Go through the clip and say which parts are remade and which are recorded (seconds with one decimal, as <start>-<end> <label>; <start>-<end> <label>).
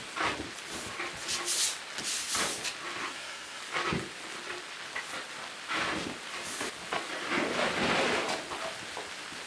0.0-3.0 recorded; 3.0-3.6 remade; 3.6-9.5 recorded